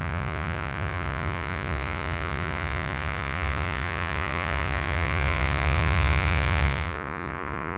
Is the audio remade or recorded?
remade